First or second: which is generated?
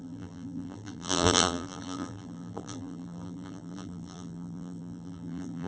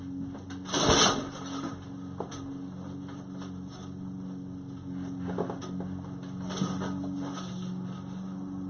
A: first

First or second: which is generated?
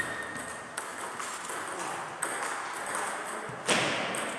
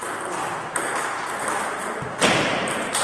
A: second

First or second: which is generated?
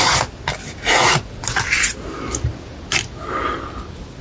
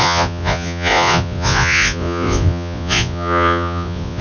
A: second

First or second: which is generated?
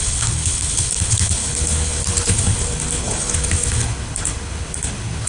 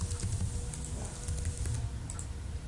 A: first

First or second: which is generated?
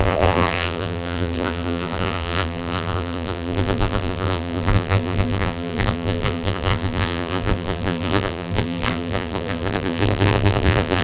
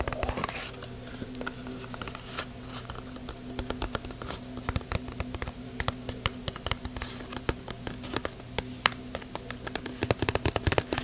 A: first